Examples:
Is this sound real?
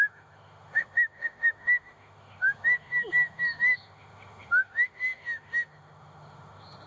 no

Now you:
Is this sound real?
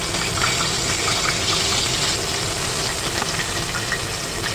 yes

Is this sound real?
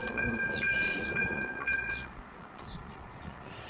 no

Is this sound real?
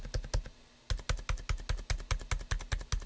yes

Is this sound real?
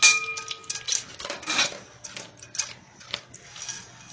yes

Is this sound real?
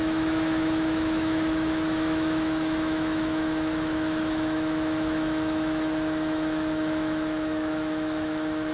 no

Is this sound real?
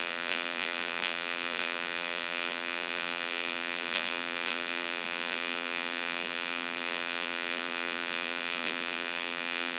no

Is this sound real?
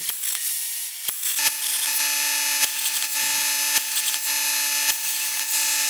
yes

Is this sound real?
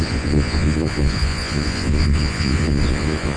no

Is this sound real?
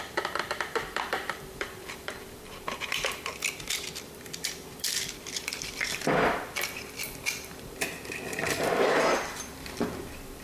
no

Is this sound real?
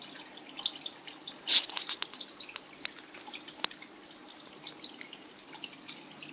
yes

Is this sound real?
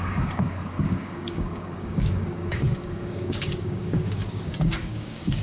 no